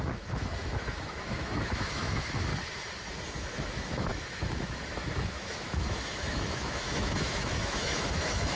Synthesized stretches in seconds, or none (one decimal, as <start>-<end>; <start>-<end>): 0.0-2.5; 3.5-8.6